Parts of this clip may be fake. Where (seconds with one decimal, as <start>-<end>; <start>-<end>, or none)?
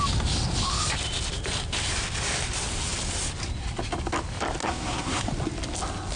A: 4.6-5.2